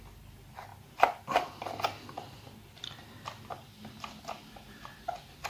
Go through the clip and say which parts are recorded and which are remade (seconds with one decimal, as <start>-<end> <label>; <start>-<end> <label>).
0.0-5.5 recorded